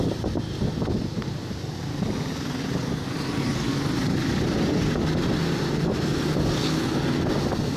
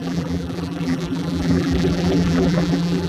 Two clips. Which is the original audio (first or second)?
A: first